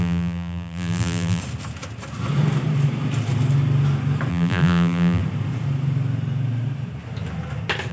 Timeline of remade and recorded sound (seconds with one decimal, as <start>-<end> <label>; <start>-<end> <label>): 0.0-1.4 remade; 1.4-4.3 recorded; 4.3-5.2 remade; 5.2-7.9 recorded